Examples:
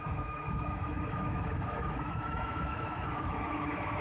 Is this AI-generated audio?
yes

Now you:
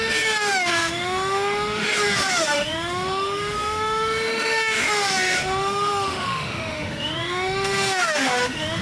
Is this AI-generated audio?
yes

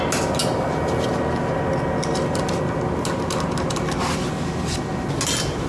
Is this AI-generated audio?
no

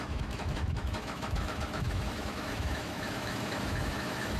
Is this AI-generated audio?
yes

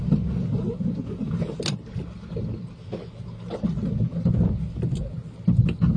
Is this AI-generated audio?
no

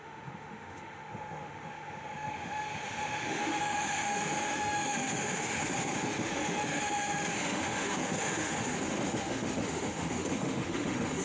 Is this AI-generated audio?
yes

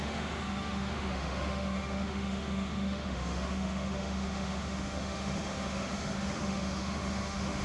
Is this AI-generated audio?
yes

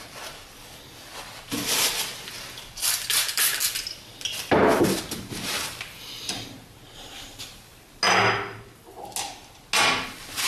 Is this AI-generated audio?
no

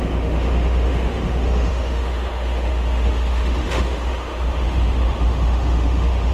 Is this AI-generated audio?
yes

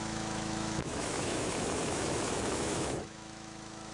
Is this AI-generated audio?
yes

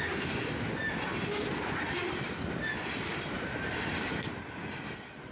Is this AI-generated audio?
no